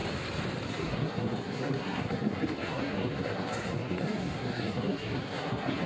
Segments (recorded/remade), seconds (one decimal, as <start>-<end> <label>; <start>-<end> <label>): 0.0-0.7 recorded; 0.7-5.9 remade